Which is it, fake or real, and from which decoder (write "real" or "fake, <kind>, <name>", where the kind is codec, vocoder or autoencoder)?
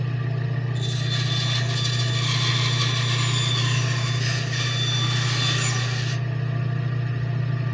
real